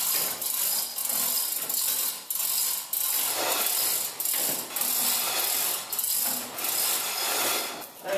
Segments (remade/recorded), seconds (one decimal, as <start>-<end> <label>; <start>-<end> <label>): 0.0-8.2 recorded